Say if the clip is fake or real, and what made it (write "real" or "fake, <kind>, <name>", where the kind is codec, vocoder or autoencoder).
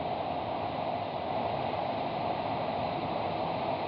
real